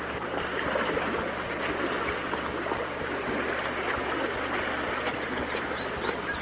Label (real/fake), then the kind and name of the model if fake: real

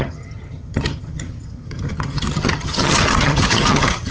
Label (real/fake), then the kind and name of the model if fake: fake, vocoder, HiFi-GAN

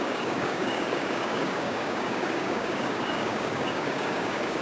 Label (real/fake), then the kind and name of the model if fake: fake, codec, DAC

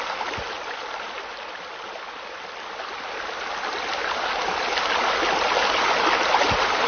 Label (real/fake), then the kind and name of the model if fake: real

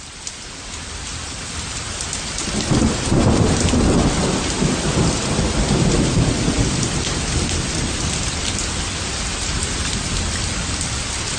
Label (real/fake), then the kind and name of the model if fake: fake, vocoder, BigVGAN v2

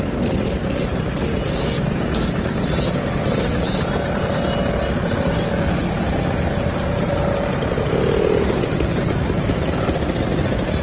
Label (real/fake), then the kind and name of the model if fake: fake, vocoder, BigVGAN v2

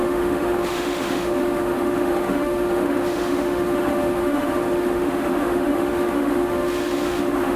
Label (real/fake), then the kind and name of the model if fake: fake, autoencoder, DAC-VAE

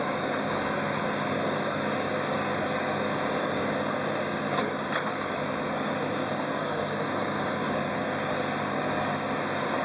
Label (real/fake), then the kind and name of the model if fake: fake, codec, DAC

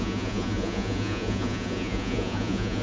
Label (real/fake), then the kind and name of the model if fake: fake, vocoder, Vocos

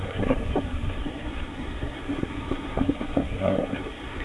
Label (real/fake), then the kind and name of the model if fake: fake, codec, SNAC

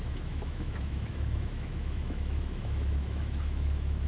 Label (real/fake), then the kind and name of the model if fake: fake, autoencoder, DAC-VAE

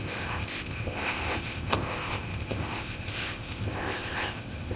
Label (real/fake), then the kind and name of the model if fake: fake, codec, ZipCodec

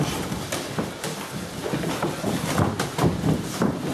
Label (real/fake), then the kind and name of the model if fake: real